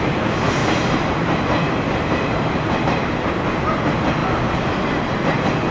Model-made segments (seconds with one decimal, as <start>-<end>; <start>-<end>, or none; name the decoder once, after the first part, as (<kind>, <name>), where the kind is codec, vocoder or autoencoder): 0.6-2.8 (vocoder, BigVGAN v2)